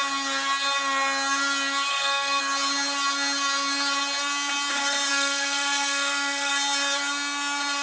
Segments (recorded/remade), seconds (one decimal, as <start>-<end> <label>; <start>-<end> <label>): 0.0-1.9 recorded; 1.9-2.4 remade; 2.4-5.1 recorded; 5.1-6.5 remade; 6.5-7.8 recorded